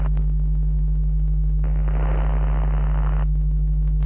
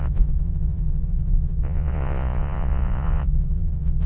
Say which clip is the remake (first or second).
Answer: second